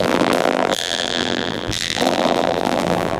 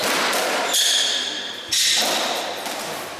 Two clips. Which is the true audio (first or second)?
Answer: second